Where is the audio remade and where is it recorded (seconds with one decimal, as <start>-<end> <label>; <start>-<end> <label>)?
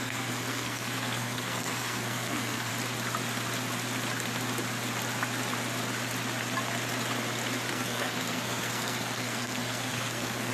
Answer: 0.0-2.7 remade; 2.7-7.7 recorded; 7.7-10.5 remade